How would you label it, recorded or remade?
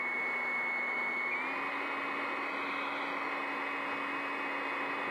recorded